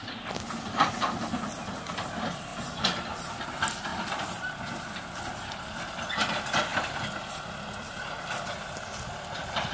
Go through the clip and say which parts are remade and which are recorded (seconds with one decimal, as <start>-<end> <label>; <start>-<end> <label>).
0.0-2.5 recorded; 2.5-3.3 remade; 3.3-3.9 recorded; 3.9-4.6 remade; 4.6-9.7 recorded